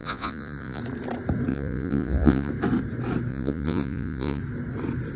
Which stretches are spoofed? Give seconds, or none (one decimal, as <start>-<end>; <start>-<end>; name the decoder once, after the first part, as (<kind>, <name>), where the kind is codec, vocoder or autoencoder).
0.0-0.8 (vocoder, Vocos); 1.5-2.5; 3.3-4.4